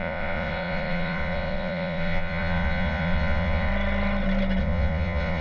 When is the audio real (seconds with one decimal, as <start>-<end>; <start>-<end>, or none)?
3.7-4.6

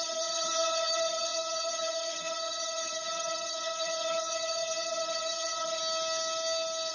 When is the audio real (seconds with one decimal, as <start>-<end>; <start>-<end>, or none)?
5.8-6.9